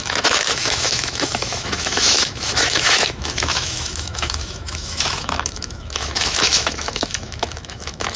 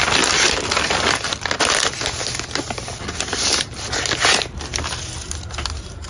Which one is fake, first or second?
first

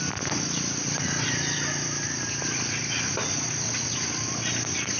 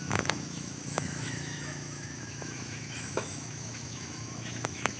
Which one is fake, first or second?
second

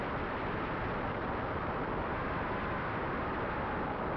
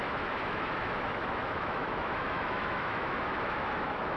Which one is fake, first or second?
second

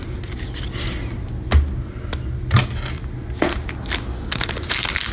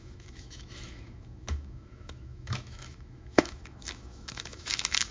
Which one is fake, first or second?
second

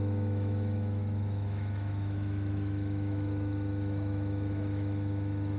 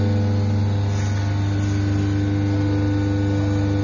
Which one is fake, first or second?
first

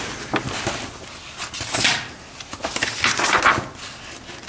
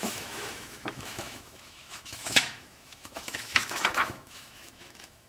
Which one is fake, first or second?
second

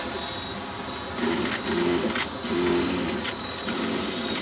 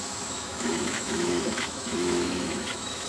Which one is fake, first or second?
second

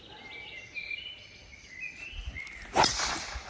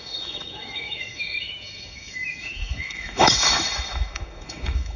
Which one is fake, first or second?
second